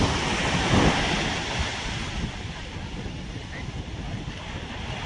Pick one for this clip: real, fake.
real